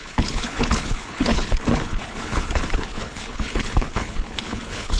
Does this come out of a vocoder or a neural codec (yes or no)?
yes